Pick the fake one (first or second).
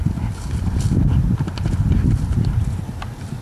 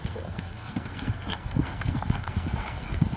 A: second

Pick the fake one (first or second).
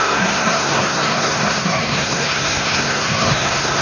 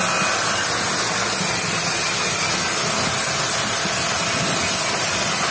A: first